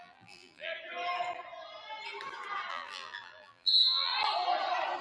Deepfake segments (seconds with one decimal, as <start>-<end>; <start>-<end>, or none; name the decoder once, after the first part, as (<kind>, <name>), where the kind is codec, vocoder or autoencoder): 0.0-0.7 (vocoder, BigVGAN v2); 2.7-4.1